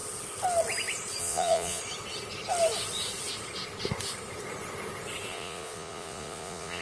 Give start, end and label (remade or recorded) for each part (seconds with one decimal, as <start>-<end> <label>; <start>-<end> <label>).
0.0-1.2 recorded; 1.2-1.8 remade; 1.8-5.3 recorded; 5.3-6.8 remade